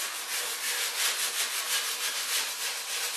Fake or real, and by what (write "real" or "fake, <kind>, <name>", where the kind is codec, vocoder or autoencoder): real